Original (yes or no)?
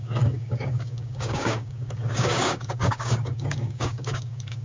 no